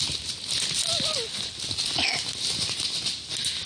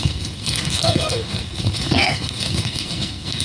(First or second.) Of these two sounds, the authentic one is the first